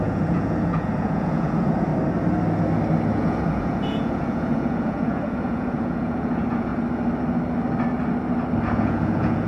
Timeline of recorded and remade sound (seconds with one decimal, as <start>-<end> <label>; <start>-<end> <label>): 0.0-1.9 remade; 1.9-3.1 recorded; 3.1-6.7 remade; 6.7-8.6 recorded; 8.6-9.5 remade